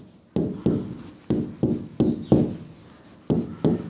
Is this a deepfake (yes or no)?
no